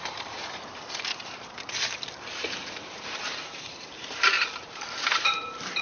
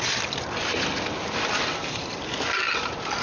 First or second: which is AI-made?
first